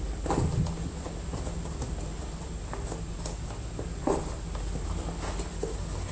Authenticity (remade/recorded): recorded